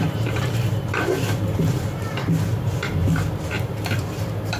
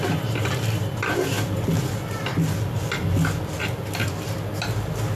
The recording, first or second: second